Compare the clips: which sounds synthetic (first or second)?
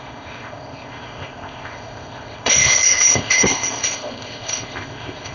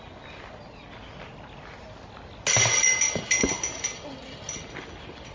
first